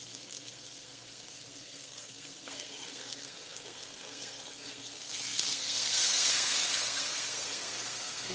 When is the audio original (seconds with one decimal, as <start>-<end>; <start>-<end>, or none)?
none